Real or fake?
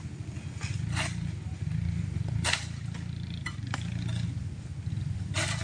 real